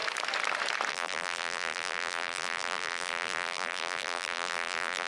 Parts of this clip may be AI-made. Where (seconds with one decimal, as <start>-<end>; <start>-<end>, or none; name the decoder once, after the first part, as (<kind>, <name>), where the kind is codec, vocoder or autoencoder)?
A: 0.9-5.1 (vocoder, BigVGAN v2)